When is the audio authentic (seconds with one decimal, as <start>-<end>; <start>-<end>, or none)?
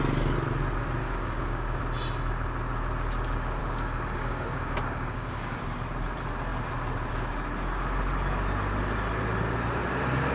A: 0.0-1.0; 1.8-3.6; 5.6-10.3